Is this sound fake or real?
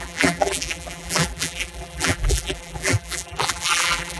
fake